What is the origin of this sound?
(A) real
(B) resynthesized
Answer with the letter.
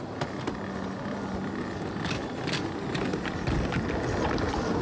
A